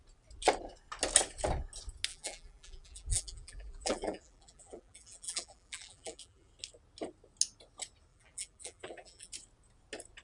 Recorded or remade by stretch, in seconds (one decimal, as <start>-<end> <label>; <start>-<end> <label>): 0.0-2.1 recorded; 2.1-6.5 remade; 6.5-8.1 recorded; 8.1-9.3 remade; 9.3-10.2 recorded